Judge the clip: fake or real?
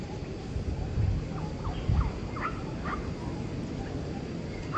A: real